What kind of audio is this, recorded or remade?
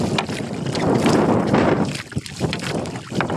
remade